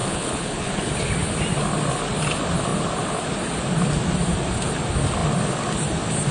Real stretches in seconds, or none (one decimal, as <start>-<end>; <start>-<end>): 0.9-6.3